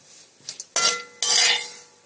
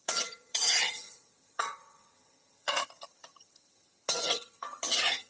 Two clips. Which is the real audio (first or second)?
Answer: first